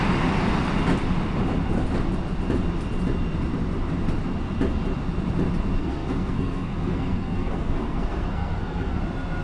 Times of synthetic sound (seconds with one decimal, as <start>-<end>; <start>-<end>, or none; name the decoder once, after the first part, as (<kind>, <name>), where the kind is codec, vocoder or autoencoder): 5.8-9.0 (codec, SNAC)